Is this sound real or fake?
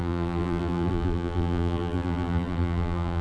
fake